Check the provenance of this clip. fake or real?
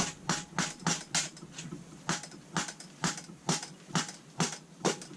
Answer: real